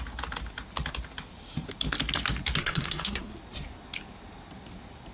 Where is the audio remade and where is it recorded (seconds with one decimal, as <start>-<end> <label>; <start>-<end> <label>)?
0.0-2.6 recorded; 2.6-3.4 remade; 3.4-5.1 recorded